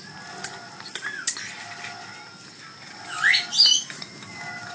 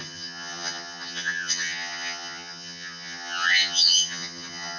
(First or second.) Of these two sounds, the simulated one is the second